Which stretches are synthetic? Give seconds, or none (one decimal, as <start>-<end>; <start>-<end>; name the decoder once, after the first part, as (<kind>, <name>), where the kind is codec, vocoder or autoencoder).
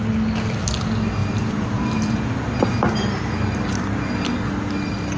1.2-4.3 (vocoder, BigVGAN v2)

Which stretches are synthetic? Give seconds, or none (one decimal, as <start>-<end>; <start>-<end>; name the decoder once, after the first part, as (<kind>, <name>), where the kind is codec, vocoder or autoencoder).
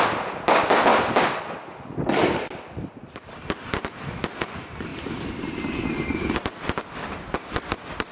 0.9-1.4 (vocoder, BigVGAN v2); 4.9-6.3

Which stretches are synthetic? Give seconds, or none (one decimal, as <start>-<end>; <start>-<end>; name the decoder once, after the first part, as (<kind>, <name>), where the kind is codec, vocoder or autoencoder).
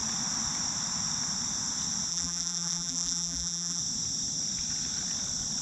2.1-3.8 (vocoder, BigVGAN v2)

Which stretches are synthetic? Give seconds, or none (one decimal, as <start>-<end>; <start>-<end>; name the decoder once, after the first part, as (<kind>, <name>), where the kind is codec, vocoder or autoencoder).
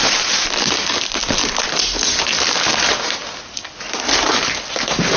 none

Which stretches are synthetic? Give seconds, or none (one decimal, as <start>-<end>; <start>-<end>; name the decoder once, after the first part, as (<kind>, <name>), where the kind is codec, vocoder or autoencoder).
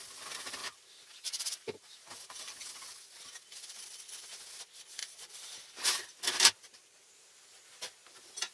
0.6-2.7 (vocoder, BigVGAN v2); 5.0-6.2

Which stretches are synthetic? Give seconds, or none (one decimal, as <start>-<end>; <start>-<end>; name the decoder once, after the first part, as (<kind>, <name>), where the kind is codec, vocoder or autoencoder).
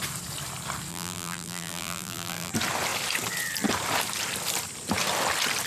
0.9-2.5 (vocoder, BigVGAN v2)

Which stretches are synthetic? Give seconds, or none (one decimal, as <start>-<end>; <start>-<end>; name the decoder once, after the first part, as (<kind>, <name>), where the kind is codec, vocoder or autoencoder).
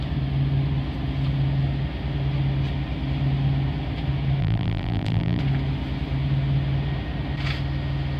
4.4-5.4 (vocoder, BigVGAN v2)